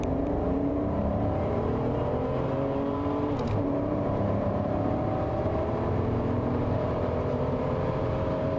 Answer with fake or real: fake